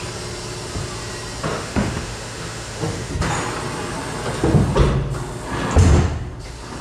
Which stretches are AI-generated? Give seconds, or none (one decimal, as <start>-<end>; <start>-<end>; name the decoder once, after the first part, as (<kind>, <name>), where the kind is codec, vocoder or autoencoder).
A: 1.5-3.1 (autoencoder, DAC-VAE)